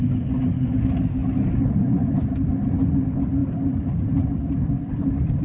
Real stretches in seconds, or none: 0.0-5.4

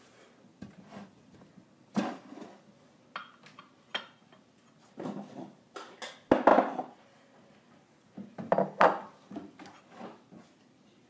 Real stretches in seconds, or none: 0.0-3.9; 5.3-11.1

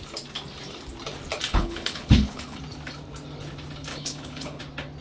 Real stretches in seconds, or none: 0.0-1.5; 2.6-3.9; 4.6-5.0